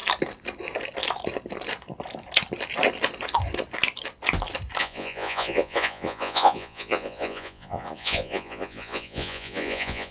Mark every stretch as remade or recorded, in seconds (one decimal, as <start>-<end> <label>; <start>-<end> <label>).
0.0-4.8 recorded; 4.8-10.1 remade